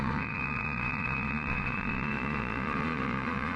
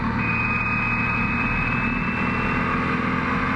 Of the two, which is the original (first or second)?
second